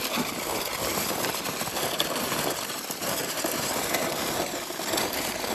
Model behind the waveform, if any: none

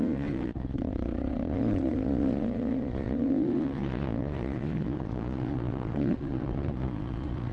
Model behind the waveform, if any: vocoder, Vocos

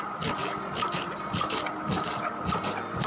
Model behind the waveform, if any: none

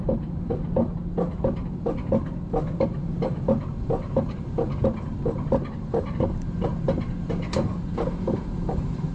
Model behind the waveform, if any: vocoder, BigVGAN v2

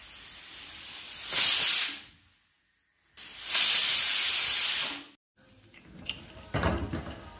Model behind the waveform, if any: none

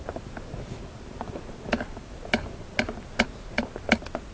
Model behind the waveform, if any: none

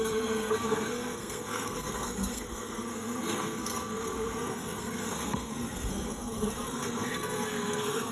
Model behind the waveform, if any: codec, SNAC